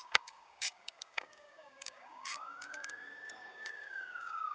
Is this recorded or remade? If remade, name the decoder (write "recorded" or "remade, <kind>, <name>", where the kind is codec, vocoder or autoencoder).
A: remade, codec, DAC